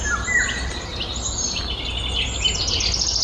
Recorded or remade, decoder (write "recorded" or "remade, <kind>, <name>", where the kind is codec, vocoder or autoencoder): recorded